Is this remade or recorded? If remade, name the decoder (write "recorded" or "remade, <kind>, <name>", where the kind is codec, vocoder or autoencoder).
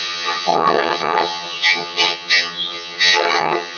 remade, vocoder, HiFi-GAN